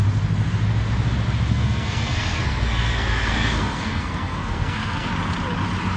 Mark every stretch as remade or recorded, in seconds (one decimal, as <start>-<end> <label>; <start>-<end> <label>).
0.0-1.5 recorded; 1.5-5.1 remade; 5.1-6.0 recorded